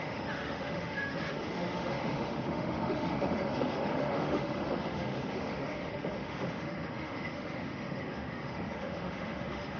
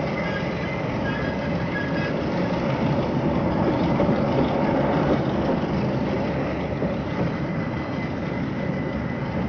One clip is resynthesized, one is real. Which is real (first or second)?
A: second